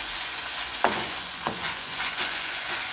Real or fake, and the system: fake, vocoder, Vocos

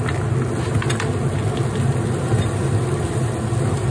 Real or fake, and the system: real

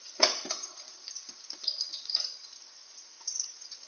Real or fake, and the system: fake, vocoder, Vocos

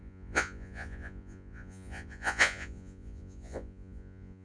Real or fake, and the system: fake, vocoder, Vocos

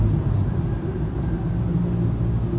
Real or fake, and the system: real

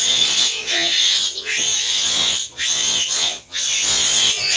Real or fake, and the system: fake, vocoder, Vocos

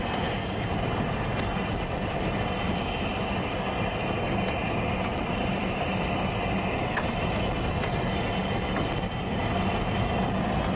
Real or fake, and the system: real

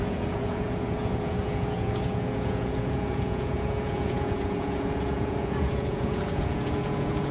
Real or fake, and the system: fake, vocoder, Vocos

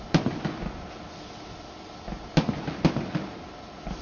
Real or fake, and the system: real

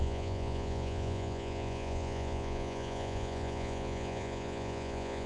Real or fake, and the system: fake, vocoder, Vocos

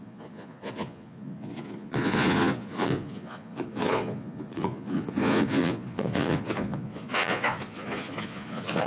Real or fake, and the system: fake, vocoder, Vocos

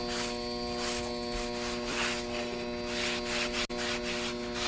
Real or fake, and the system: real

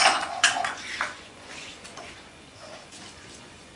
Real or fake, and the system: fake, vocoder, Vocos